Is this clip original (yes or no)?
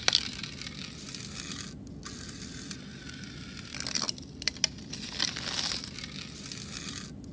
yes